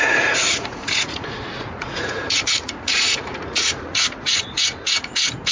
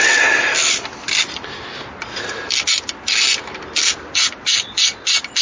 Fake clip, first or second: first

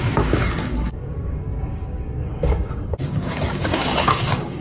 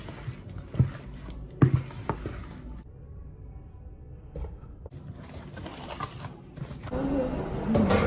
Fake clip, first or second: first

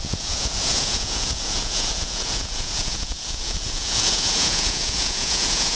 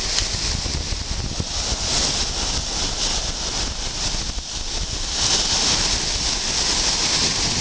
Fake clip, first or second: first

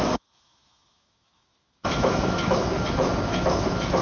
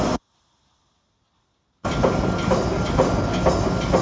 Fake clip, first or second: first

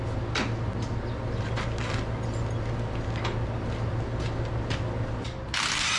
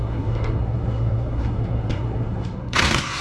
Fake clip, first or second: second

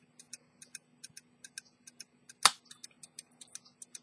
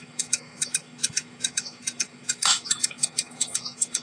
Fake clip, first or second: second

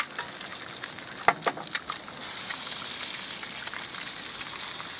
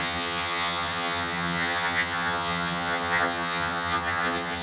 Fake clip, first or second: second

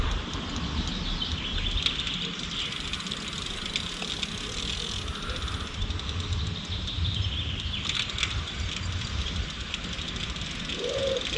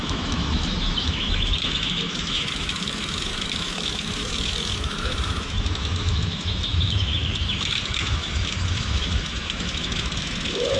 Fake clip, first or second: second